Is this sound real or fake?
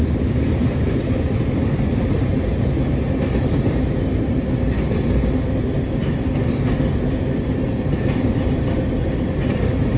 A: real